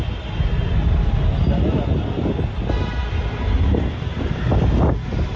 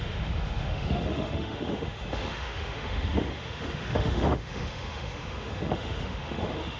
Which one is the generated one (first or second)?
second